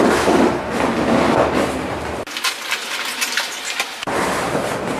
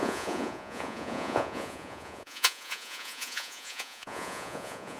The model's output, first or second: second